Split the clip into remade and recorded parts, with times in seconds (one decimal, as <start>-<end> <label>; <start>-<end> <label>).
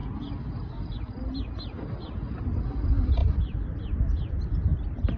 0.0-3.2 recorded; 3.2-4.3 remade; 4.3-4.7 recorded; 4.7-5.2 remade